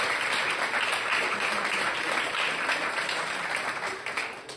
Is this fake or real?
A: real